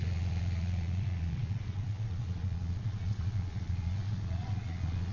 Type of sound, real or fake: fake